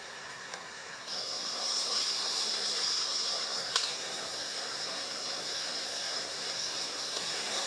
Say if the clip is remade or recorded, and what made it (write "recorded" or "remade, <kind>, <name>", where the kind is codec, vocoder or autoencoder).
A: remade, codec, SNAC